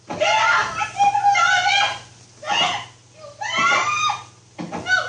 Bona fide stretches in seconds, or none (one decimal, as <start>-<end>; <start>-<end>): 0.0-5.1